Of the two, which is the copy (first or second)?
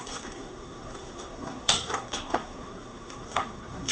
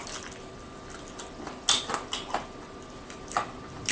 first